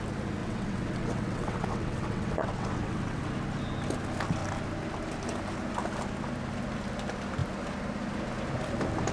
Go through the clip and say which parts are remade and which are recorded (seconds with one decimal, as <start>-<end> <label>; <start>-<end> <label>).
0.0-0.4 recorded; 0.4-3.2 remade; 3.2-9.1 recorded